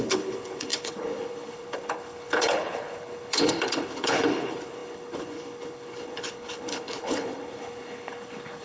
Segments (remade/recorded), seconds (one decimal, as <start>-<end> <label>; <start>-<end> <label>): 0.0-8.6 remade